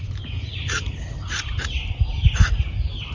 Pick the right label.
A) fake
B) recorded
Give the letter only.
B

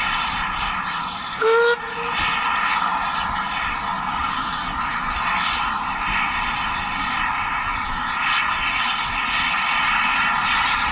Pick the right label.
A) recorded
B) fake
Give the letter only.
A